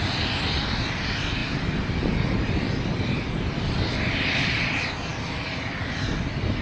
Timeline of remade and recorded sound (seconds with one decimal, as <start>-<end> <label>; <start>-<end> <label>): 0.0-6.6 recorded